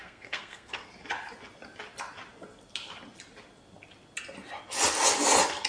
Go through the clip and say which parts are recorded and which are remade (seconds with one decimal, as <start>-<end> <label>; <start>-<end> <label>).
0.0-0.9 remade; 0.9-5.7 recorded